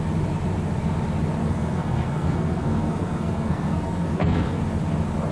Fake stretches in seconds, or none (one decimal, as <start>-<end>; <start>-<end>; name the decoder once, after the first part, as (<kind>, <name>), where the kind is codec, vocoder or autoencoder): 1.4-4.6 (codec, SNAC)